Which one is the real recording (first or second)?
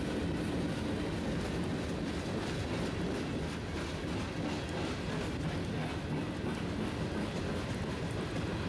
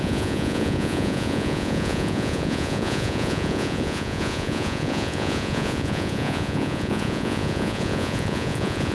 first